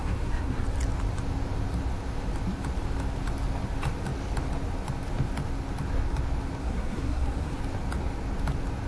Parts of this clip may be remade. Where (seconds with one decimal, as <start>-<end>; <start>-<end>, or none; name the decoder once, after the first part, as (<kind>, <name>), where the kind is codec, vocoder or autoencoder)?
0.0-0.6 (codec, SNAC); 6.6-7.6